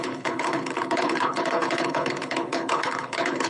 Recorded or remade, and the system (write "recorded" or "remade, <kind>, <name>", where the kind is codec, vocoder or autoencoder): remade, codec, HILCodec